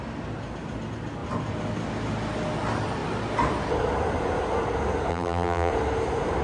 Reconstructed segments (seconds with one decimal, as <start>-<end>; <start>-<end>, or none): 5.1-5.7